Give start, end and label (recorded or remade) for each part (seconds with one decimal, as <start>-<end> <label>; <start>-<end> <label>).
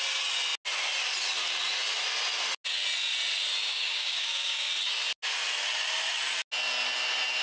0.0-3.7 recorded; 3.7-4.7 remade; 4.7-7.4 recorded